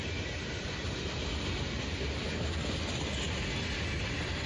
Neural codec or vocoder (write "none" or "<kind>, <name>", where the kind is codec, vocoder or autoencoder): none